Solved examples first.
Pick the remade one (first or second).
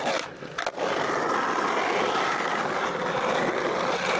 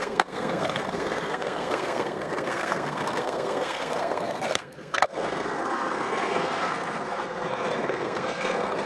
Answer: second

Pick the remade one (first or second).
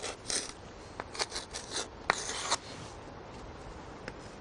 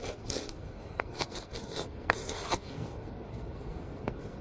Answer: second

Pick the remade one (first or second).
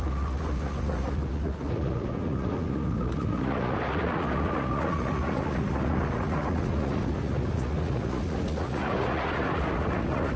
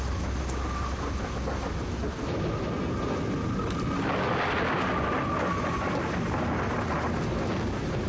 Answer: first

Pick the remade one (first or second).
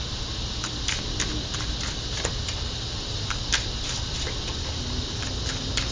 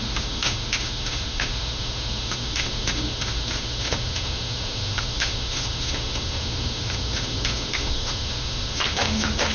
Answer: second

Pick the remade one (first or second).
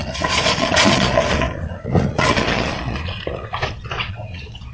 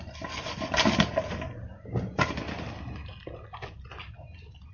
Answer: first